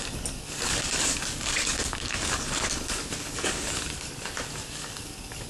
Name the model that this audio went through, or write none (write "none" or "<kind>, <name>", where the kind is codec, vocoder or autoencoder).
codec, DAC